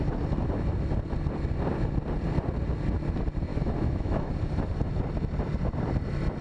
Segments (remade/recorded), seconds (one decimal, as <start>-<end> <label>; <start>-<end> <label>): 0.0-3.5 recorded; 3.5-4.3 remade; 4.3-6.4 recorded